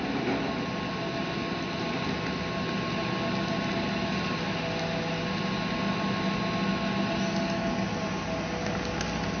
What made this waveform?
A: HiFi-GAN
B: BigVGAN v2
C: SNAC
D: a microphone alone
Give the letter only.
D